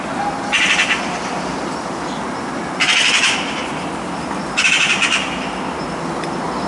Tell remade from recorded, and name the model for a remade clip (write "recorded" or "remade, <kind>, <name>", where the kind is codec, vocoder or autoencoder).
recorded